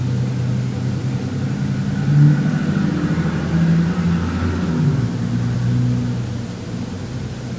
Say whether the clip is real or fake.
real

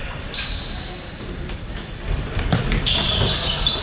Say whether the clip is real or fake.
fake